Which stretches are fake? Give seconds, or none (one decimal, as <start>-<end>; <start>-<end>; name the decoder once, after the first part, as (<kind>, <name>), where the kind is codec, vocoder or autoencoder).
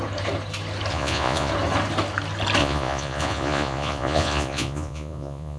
0.9-1.5 (vocoder, Vocos); 2.6-5.6